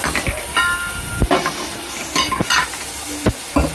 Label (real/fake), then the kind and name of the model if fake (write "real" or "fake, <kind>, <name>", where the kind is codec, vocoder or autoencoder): real